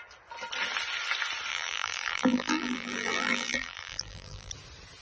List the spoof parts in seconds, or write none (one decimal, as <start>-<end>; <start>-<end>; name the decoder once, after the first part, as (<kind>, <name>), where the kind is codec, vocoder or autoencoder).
1.5-4.5 (vocoder, BigVGAN v2)